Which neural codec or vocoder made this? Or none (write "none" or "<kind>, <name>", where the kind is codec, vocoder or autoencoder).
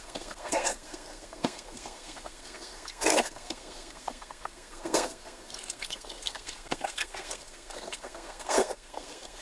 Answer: codec, SNAC